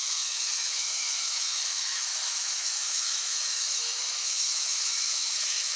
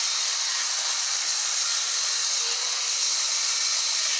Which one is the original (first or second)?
second